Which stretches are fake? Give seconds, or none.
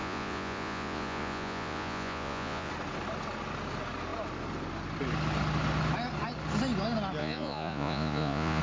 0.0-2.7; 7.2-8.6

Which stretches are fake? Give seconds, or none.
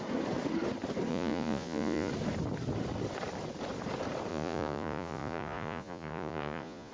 1.1-2.1; 4.3-6.9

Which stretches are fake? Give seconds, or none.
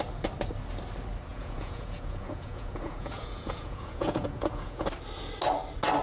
1.3-4.9